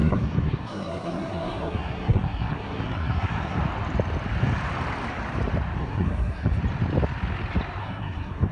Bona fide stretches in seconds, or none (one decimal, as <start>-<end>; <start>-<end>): 3.6-5.8; 6.6-7.8